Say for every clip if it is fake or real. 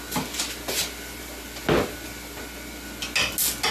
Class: real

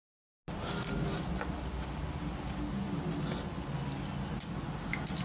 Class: real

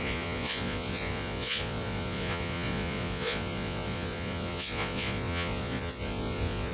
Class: fake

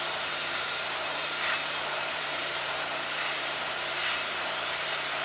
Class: fake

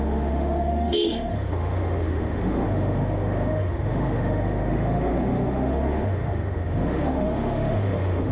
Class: fake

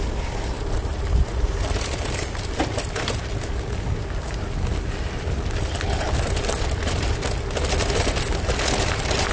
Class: real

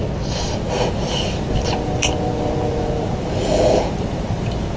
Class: real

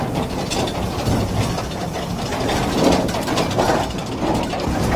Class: real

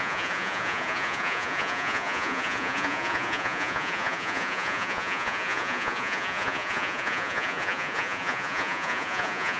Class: fake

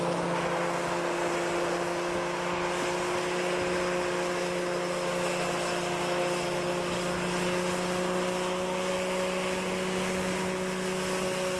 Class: real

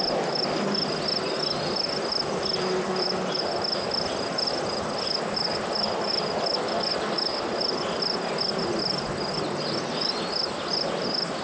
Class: real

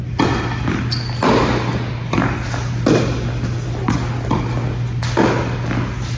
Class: real